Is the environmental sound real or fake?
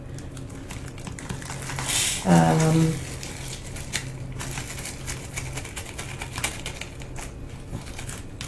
real